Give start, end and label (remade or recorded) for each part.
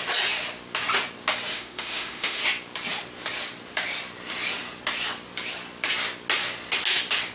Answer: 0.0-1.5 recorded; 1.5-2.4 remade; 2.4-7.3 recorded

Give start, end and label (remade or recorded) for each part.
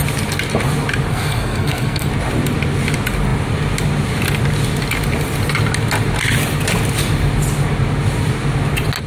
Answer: 0.0-1.1 recorded; 1.1-2.1 remade; 2.1-9.1 recorded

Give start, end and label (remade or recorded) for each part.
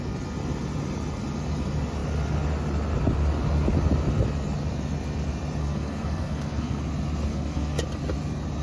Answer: 0.0-5.6 recorded; 5.6-6.8 remade; 6.8-7.3 recorded; 7.3-7.8 remade; 7.8-8.6 recorded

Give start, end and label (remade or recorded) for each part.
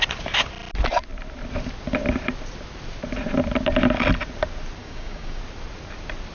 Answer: 0.0-4.8 recorded; 4.8-5.4 remade; 5.4-6.3 recorded